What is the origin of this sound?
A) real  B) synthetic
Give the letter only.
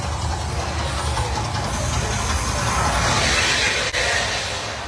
A